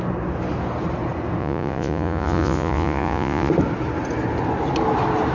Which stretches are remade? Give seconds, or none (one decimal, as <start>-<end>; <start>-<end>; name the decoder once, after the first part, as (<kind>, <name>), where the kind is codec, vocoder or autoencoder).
1.4-3.5 (vocoder, Vocos)